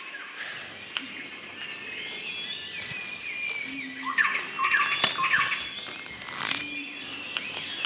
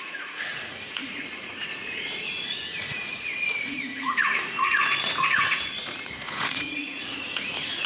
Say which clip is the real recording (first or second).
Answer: first